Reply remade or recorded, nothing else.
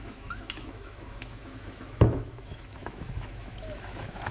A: remade